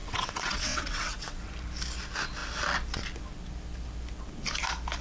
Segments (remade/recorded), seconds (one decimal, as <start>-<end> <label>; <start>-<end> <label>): 0.0-1.5 remade; 1.5-5.0 recorded